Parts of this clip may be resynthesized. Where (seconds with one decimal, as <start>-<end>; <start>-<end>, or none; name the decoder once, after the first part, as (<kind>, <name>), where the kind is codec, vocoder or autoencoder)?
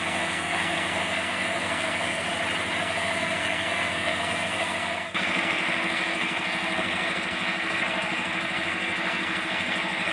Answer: 0.0-2.3 (codec, SNAC); 2.8-10.1